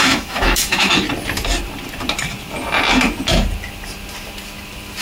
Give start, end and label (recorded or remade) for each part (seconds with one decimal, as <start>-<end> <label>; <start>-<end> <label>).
0.0-0.9 remade; 0.9-5.0 recorded